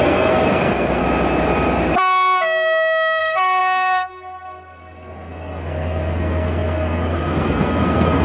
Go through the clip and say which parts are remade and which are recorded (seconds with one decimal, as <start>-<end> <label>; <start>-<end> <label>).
0.0-1.0 remade; 1.0-3.2 recorded; 3.2-8.2 remade